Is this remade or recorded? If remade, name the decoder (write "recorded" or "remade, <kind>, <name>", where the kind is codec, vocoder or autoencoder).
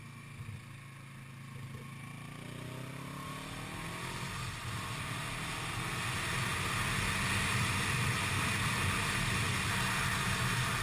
recorded